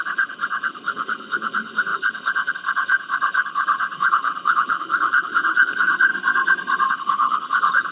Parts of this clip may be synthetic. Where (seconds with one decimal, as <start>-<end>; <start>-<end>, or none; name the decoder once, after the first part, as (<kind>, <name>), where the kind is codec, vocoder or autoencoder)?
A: 0.0-6.1 (codec, HILCodec); 6.9-7.9